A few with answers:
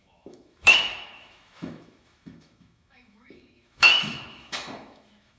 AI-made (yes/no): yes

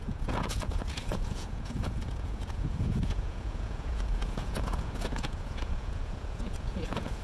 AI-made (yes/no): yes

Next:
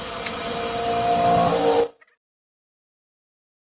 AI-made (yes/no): no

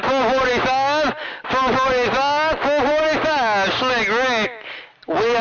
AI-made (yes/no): no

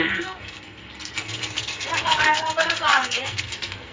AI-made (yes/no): yes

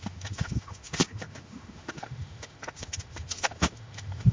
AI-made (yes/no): yes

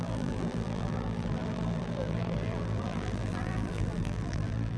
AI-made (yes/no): yes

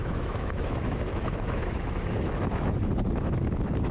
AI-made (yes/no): yes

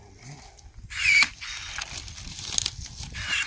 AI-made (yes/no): no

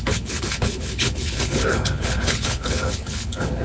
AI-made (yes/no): yes